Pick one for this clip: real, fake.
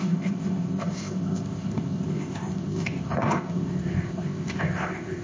fake